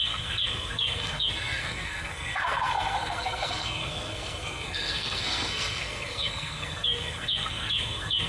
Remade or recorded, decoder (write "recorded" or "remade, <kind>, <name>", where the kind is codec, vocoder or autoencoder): remade, codec, SNAC